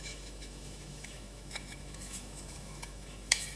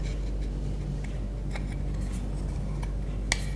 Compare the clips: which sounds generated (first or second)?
first